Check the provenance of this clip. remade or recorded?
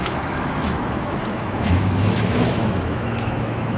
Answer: remade